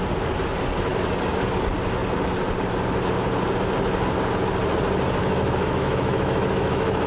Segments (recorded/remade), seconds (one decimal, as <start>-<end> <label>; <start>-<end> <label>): 0.0-5.2 recorded; 5.2-7.1 remade